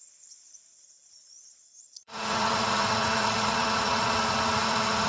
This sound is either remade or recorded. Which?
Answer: remade